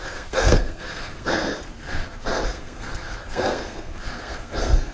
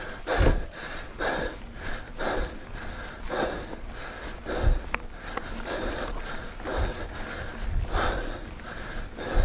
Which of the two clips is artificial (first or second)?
first